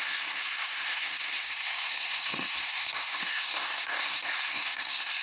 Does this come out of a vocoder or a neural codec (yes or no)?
yes